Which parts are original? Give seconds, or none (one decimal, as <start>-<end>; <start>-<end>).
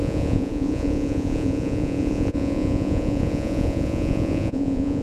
none